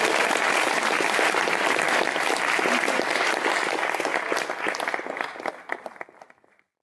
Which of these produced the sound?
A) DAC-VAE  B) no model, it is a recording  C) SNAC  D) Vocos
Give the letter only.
B